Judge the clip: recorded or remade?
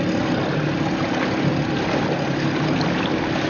recorded